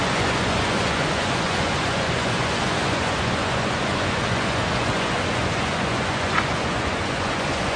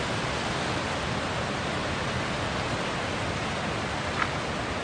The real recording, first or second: second